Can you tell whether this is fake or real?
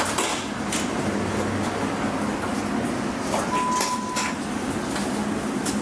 real